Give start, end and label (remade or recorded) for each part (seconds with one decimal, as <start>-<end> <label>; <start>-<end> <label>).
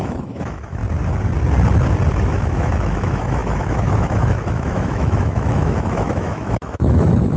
0.0-0.8 remade; 0.8-2.1 recorded; 2.1-7.4 remade